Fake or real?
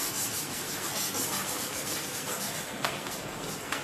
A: fake